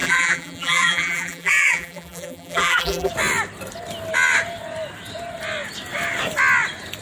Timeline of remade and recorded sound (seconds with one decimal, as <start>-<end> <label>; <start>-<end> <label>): 0.0-3.1 remade; 3.1-7.0 recorded